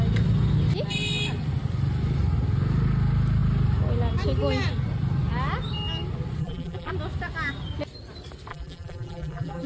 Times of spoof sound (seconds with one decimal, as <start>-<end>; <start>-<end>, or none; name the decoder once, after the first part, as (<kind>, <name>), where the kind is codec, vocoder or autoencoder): 6.4-6.9 (vocoder, BigVGAN v2); 8.5-9.7